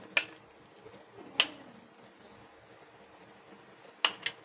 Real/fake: real